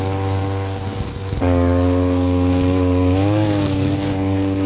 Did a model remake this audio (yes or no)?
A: yes